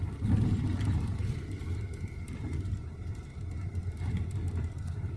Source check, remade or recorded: recorded